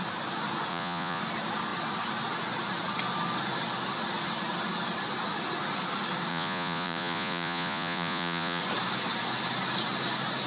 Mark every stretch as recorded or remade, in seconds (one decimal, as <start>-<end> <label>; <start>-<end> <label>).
0.0-0.7 recorded; 0.7-1.2 remade; 1.2-6.3 recorded; 6.3-8.6 remade; 8.6-10.5 recorded